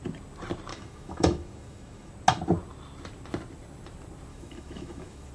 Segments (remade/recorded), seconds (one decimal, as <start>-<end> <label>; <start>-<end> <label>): 0.0-0.7 recorded; 0.7-2.1 remade; 2.1-4.3 recorded; 4.3-5.3 remade